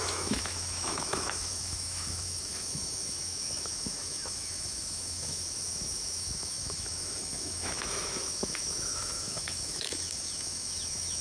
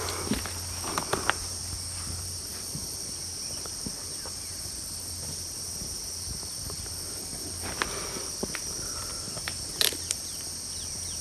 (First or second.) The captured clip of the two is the second